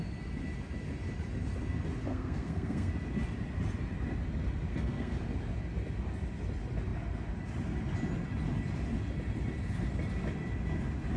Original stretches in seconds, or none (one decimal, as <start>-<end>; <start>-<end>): 0.0-2.1; 2.9-4.7; 5.2-11.2